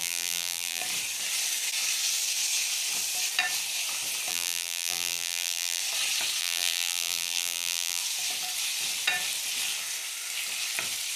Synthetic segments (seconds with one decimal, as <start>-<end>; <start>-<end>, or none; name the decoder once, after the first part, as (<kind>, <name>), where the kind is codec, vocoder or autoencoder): 0.0-0.8 (vocoder, BigVGAN v2); 4.3-5.8; 6.4-8.0